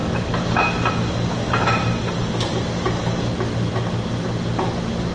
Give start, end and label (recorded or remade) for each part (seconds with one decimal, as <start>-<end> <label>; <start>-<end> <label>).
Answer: 0.0-5.1 recorded